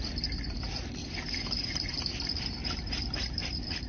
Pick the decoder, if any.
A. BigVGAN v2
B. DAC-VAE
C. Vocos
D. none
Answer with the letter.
A